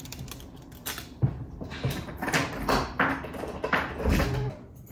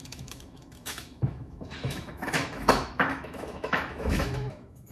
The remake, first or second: second